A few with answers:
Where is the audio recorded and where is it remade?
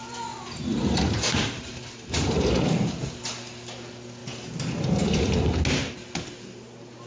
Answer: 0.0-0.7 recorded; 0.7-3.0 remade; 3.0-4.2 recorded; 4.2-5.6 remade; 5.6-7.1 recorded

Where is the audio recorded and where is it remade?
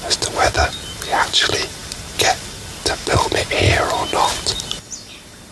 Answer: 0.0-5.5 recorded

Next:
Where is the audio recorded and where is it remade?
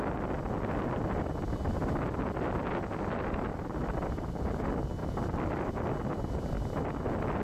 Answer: 0.0-3.5 recorded; 3.5-4.6 remade; 4.6-5.0 recorded; 5.0-5.9 remade; 5.9-7.4 recorded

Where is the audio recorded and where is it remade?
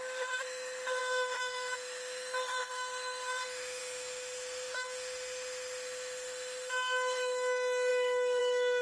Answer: 0.0-8.8 remade